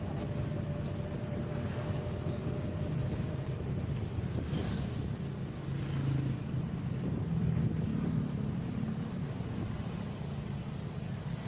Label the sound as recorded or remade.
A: recorded